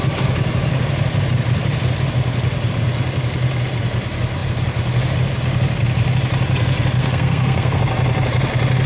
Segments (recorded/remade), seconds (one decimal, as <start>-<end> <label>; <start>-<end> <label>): 0.0-7.0 recorded; 7.0-7.8 remade; 7.8-8.9 recorded

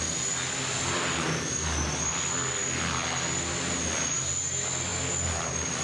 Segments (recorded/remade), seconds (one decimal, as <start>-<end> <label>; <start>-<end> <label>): 0.0-5.8 recorded

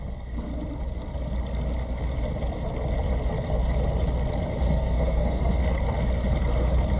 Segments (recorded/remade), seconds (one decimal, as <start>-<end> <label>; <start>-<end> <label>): 0.0-0.5 remade; 0.5-4.7 recorded; 4.7-5.6 remade; 5.6-7.0 recorded

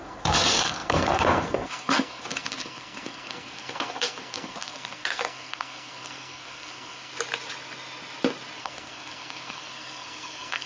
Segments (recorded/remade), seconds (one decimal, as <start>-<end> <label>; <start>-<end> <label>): 0.0-7.1 remade; 7.1-8.6 recorded; 8.6-10.7 remade

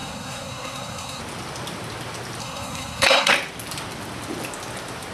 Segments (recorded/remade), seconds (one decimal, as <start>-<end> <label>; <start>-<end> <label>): 0.0-1.2 remade; 1.2-2.4 recorded; 2.4-3.3 remade; 3.3-5.1 recorded